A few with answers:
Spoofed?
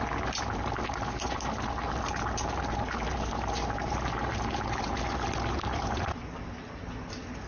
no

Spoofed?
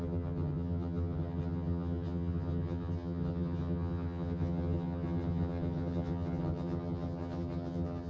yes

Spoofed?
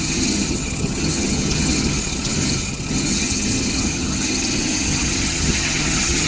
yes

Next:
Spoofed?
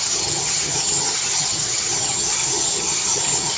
yes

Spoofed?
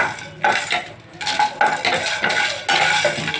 no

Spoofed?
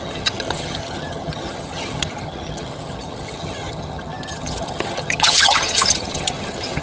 yes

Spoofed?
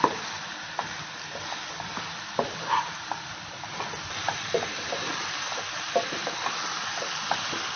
no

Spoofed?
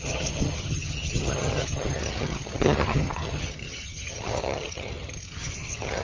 yes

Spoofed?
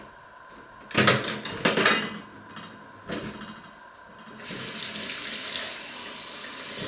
no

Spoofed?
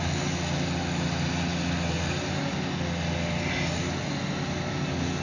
no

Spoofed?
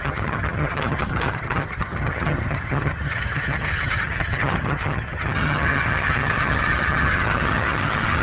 yes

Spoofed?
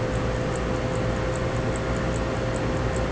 no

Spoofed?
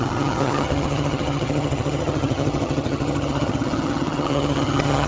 yes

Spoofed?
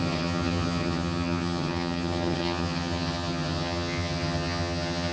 yes